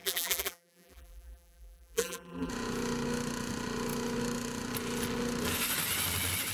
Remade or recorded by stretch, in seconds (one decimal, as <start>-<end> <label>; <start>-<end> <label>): 0.0-2.5 remade; 2.5-6.5 recorded